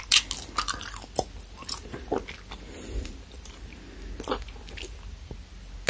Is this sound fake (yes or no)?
no